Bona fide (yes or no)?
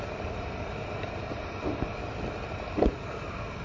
yes